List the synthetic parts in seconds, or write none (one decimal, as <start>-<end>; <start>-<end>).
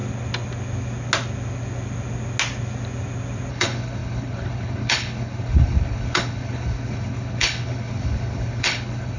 3.5-9.2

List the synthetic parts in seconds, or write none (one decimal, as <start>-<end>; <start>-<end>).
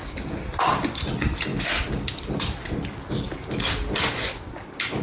none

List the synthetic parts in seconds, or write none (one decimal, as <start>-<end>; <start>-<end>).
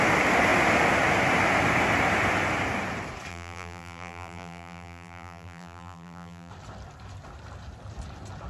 3.3-6.5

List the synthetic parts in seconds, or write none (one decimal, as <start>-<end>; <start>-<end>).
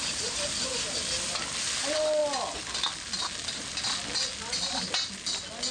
none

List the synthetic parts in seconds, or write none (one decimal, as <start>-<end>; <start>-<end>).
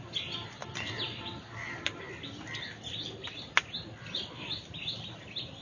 none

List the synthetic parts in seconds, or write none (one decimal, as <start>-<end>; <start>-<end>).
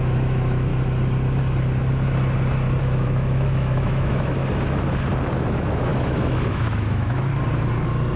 0.0-0.7; 2.8-4.4; 5.4-7.3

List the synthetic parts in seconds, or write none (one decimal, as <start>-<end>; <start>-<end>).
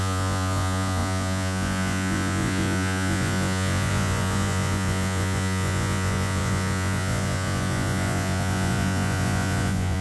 0.0-10.0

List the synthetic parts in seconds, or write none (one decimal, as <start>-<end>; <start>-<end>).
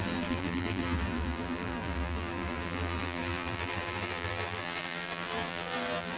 0.0-6.2